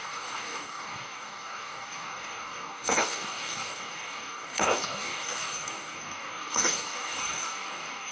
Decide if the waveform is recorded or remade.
remade